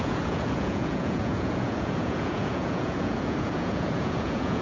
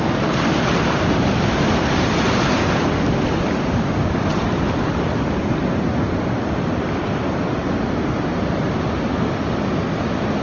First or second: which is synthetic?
first